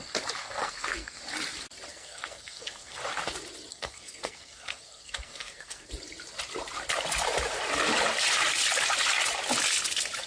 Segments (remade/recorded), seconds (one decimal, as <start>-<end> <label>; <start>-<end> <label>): 0.0-0.4 recorded; 0.4-1.2 remade; 1.2-1.9 recorded; 1.9-3.0 remade; 3.0-3.7 recorded; 3.7-5.9 remade; 5.9-10.3 recorded